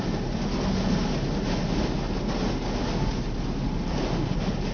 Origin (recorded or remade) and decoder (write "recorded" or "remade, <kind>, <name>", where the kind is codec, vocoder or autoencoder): recorded